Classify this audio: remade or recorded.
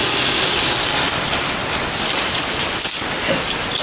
recorded